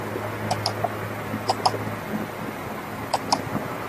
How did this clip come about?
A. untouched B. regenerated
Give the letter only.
A